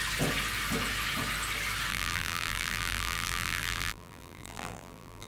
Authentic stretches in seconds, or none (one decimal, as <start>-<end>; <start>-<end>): 0.0-1.9